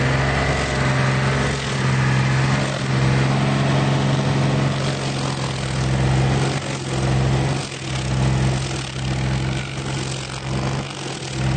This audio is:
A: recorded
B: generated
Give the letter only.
A